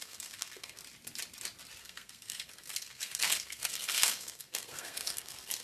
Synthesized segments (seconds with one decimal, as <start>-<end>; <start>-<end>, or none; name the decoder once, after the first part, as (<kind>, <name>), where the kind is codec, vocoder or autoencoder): 0.0-0.8 (codec, SNAC); 1.8-5.6